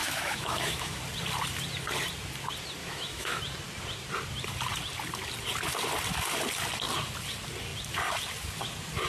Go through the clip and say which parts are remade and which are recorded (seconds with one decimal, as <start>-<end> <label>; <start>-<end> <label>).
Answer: 0.0-1.0 remade; 1.0-2.8 recorded; 2.8-3.4 remade; 3.4-9.1 recorded